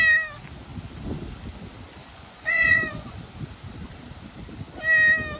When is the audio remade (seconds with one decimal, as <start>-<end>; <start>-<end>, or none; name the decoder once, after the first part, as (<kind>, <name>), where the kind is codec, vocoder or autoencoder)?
2.0-3.2 (vocoder, Vocos)